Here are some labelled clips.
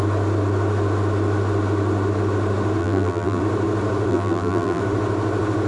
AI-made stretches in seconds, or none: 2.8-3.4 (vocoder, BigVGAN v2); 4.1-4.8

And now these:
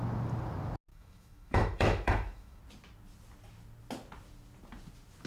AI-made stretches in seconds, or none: 0.9-2.6 (autoencoder, DAC-VAE)

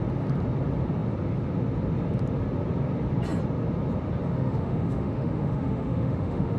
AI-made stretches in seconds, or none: 4.3-6.6 (autoencoder, DAC-VAE)

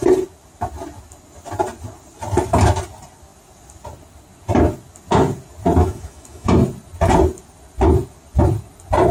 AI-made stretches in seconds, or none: 5.8-6.5 (autoencoder, DAC-VAE)

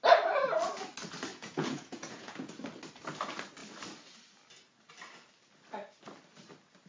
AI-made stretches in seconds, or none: 1.3-2.5 (vocoder, Vocos)

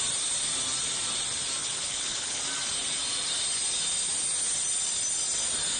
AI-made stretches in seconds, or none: 1.6-2.4 (codec, HILCodec)